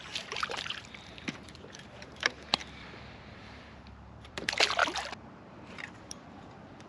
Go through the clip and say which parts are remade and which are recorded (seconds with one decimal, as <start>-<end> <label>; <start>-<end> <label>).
0.0-2.6 remade; 2.6-3.2 recorded; 3.2-4.8 remade; 4.8-5.4 recorded; 5.4-6.9 remade